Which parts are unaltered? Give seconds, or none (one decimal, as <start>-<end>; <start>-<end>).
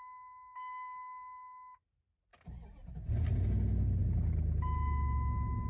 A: 0.0-2.3; 2.9-5.7